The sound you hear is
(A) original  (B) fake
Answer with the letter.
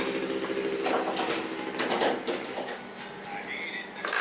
A